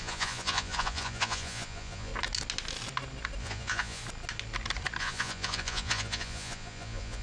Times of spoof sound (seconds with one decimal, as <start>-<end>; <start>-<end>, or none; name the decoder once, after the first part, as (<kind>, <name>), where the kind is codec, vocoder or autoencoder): 0.0-2.1 (vocoder, Vocos); 3.4-4.0; 5.0-7.2